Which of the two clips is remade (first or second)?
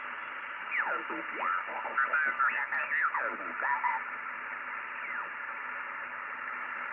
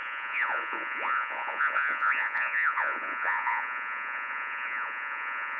second